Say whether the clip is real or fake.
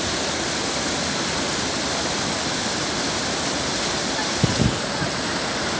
real